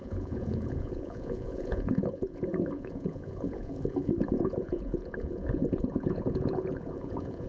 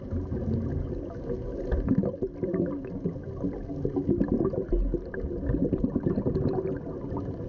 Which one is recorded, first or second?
second